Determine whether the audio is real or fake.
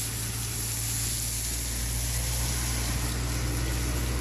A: real